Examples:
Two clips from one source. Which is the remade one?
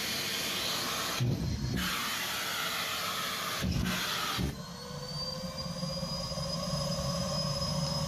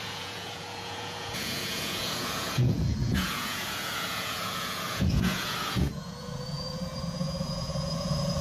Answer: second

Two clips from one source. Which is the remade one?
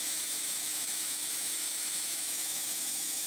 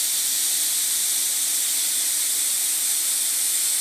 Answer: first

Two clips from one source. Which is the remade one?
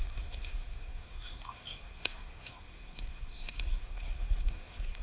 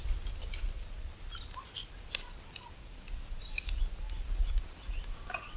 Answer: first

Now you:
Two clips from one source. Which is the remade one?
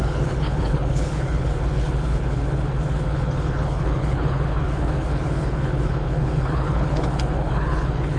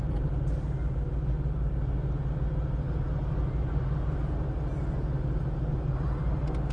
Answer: first